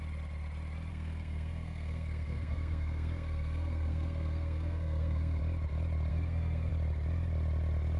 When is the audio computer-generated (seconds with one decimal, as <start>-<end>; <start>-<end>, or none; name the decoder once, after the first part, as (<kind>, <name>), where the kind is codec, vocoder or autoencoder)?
0.9-5.4 (codec, SNAC); 6.1-6.7